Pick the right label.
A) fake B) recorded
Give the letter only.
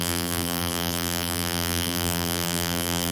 A